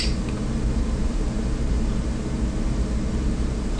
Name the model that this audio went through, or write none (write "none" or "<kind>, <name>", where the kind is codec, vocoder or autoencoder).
vocoder, BigVGAN v2